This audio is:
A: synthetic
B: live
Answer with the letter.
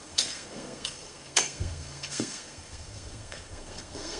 A